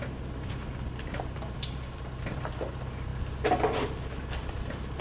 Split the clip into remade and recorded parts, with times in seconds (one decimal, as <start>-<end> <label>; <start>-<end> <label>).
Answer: 0.0-5.0 recorded